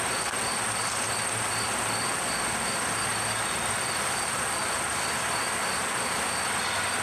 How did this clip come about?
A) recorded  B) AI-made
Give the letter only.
A